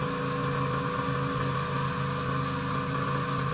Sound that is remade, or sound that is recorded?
recorded